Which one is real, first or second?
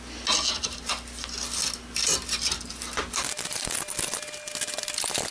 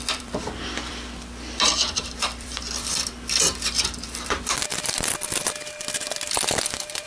first